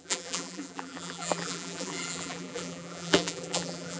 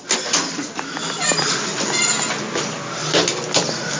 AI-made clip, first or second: first